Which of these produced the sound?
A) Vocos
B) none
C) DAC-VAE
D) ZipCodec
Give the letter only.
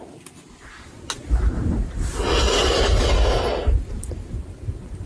B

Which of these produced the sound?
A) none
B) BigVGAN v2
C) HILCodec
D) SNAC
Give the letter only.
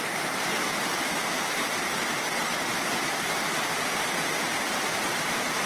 A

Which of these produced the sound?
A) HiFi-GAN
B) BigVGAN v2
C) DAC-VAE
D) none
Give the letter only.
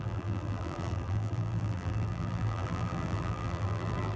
B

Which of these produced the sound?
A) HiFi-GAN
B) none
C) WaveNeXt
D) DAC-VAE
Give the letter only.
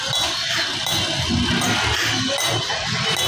B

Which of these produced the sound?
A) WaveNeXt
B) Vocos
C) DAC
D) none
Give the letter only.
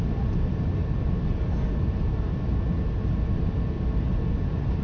D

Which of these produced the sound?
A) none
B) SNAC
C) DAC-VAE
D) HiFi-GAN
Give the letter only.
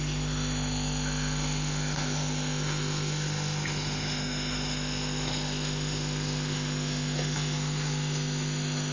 C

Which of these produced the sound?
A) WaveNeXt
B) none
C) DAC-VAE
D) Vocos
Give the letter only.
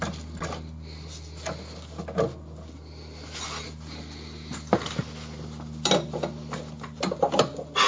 B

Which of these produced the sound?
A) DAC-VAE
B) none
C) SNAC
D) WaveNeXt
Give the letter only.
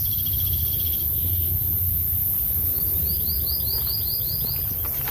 B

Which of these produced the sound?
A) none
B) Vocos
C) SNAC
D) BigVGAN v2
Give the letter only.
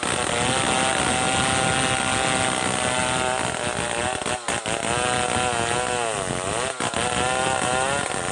A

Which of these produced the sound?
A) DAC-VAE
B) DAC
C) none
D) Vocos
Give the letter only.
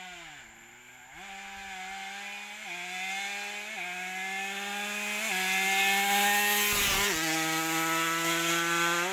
C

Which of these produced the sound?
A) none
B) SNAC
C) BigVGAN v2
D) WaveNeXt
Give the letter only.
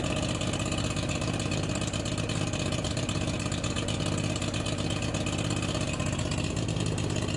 A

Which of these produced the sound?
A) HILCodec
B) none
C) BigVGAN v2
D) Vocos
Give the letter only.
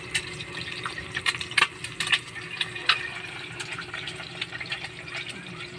C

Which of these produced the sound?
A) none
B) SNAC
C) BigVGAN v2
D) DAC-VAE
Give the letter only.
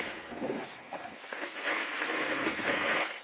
B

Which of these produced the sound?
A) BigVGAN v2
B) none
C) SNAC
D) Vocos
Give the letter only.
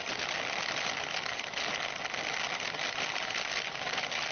B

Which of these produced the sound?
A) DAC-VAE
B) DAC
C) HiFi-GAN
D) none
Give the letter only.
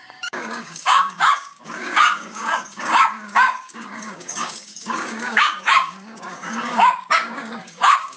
B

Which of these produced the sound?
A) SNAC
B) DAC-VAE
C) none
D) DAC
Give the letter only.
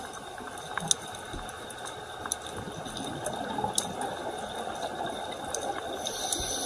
C